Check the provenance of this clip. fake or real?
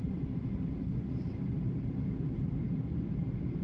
real